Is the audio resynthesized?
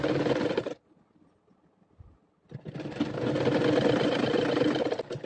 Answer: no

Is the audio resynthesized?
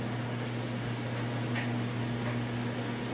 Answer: no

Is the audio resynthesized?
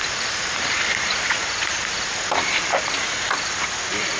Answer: yes